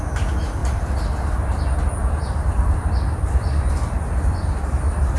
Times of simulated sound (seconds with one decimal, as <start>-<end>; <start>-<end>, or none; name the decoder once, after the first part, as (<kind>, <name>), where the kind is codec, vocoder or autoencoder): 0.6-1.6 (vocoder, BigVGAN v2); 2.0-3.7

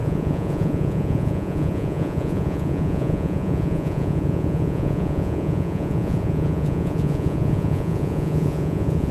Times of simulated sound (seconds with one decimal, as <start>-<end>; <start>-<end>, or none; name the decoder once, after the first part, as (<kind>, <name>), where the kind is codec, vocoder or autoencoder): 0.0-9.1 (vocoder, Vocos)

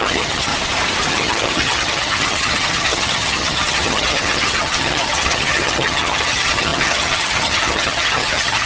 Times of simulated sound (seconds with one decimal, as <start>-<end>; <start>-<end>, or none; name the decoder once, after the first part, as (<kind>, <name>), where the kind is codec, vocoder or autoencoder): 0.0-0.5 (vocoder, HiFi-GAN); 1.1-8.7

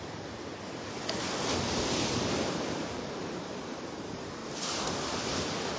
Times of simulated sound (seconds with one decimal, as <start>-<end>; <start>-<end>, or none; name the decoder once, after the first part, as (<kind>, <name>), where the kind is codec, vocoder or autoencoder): 0.0-0.5 (vocoder, BigVGAN v2); 1.8-4.4; 5.2-5.8